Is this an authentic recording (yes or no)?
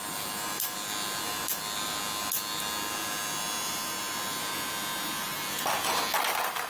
yes